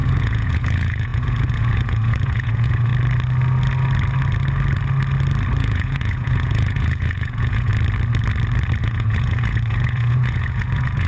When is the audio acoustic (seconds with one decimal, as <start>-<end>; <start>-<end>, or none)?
2.9-5.6; 7.7-8.8